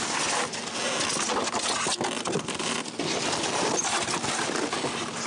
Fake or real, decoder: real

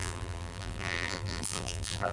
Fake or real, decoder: fake, vocoder, BigVGAN v2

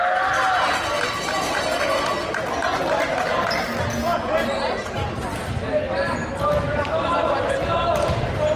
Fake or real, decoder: real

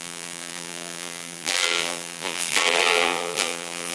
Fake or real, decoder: fake, vocoder, BigVGAN v2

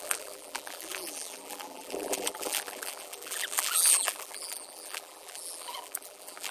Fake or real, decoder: fake, vocoder, BigVGAN v2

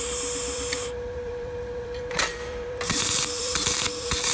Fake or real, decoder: fake, vocoder, BigVGAN v2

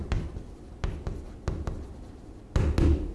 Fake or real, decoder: real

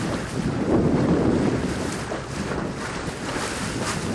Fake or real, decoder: fake, vocoder, BigVGAN v2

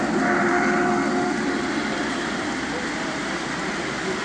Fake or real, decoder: fake, vocoder, BigVGAN v2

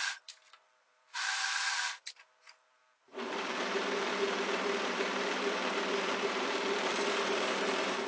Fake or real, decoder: fake, vocoder, BigVGAN v2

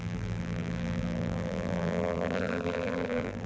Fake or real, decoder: fake, vocoder, BigVGAN v2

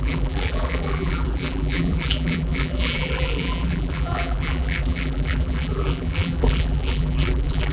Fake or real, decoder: fake, vocoder, BigVGAN v2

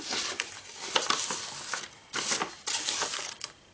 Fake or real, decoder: fake, vocoder, BigVGAN v2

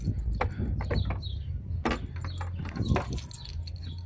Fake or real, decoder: real